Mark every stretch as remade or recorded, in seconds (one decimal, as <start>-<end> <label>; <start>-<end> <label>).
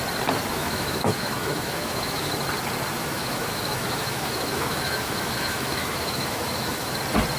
0.0-0.5 recorded; 0.5-2.3 remade; 2.3-3.0 recorded; 3.0-7.0 remade; 7.0-7.4 recorded